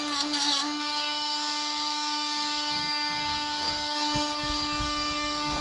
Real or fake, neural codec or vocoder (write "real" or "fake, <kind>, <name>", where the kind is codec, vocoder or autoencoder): fake, codec, DAC